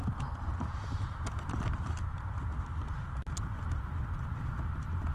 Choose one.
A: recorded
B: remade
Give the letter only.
A